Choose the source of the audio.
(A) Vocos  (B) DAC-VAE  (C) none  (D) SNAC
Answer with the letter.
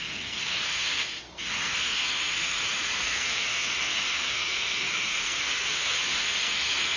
D